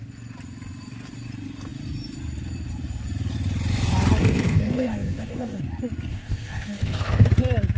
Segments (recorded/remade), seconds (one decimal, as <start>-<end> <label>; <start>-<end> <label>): 0.0-4.2 recorded; 4.2-5.6 remade; 5.6-6.1 recorded; 6.1-7.3 remade; 7.3-7.8 recorded